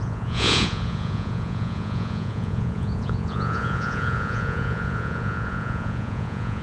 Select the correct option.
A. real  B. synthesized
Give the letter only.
B